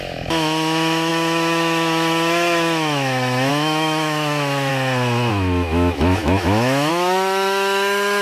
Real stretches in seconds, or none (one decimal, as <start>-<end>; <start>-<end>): 4.7-5.3